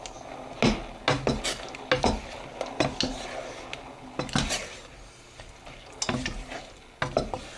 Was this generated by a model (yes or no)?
no